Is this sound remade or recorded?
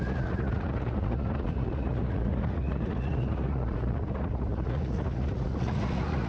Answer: remade